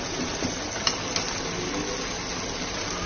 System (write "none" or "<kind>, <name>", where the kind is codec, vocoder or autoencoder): none